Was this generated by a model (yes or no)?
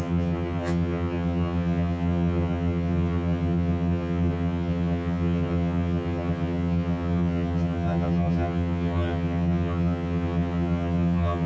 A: yes